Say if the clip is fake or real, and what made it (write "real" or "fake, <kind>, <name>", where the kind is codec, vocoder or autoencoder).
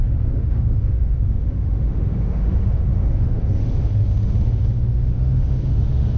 fake, autoencoder, DAC-VAE